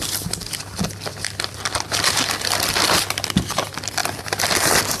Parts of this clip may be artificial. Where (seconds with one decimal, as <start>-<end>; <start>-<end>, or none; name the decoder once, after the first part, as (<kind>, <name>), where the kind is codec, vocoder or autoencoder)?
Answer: none